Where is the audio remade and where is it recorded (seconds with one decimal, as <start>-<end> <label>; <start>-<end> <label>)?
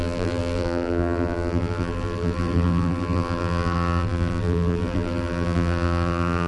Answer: 0.0-6.5 remade